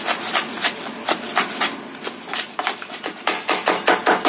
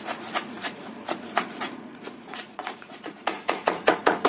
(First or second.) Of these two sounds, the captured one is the first